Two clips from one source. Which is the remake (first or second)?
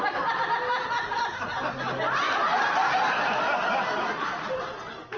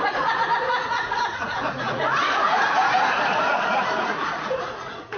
second